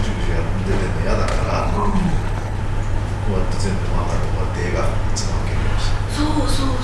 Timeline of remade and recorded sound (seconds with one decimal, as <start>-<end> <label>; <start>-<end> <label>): 0.0-1.3 recorded; 1.3-2.6 remade; 2.6-6.8 recorded